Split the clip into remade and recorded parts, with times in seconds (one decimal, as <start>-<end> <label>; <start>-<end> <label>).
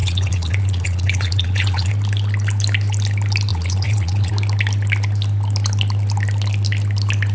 0.0-1.9 remade; 1.9-3.5 recorded; 3.5-4.3 remade; 4.3-7.3 recorded